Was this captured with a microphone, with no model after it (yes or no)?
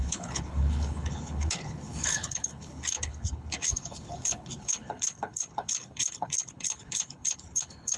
no